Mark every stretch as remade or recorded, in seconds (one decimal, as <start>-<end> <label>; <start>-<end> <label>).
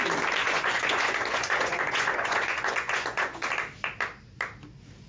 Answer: 0.0-0.4 recorded; 0.4-3.5 remade; 3.5-5.1 recorded